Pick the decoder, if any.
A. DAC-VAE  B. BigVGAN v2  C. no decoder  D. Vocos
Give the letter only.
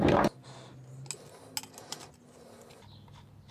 C